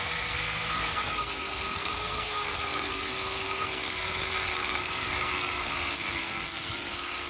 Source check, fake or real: fake